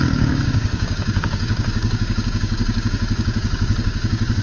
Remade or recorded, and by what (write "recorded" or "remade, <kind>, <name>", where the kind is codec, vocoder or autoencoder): remade, codec, DAC